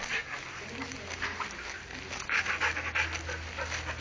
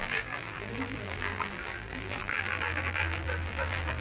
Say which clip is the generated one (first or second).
second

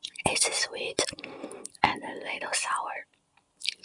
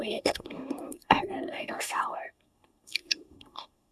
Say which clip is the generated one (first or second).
second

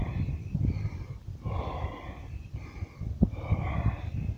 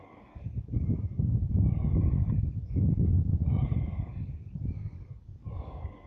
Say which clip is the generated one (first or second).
second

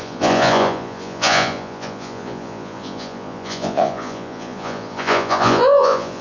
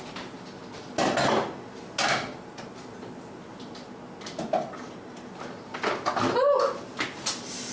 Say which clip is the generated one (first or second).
first